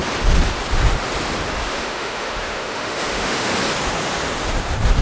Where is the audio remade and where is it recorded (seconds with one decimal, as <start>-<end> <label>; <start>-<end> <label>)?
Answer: 0.0-1.6 recorded; 1.6-3.5 remade; 3.5-5.0 recorded